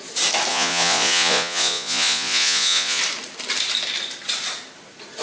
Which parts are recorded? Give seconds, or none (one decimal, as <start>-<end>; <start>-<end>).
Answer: 0.0-0.5; 3.0-5.2